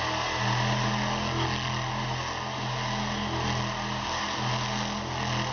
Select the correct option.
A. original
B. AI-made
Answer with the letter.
A